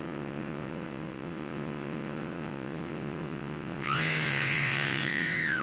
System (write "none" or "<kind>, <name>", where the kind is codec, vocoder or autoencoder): vocoder, WaveNeXt